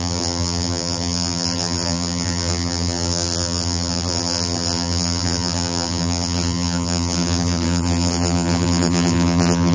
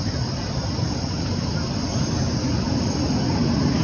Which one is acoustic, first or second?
second